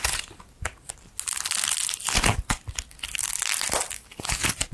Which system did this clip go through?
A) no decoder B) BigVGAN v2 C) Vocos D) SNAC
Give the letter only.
A